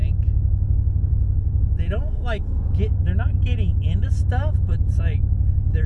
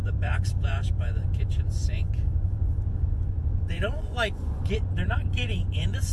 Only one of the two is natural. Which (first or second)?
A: first